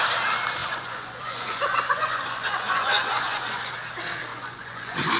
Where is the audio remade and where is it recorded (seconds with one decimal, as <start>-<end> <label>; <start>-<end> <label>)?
0.0-0.6 recorded; 0.6-3.7 remade; 3.7-4.3 recorded; 4.3-5.2 remade